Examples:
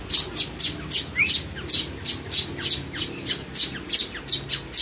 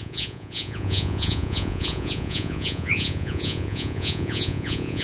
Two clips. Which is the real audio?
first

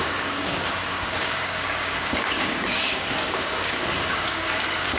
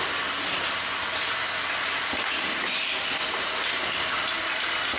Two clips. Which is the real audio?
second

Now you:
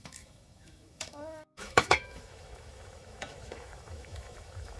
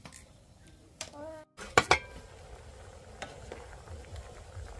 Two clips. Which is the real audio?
second